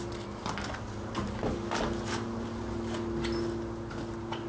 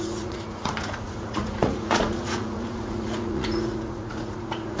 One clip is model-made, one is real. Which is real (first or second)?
first